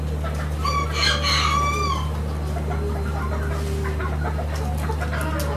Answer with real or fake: real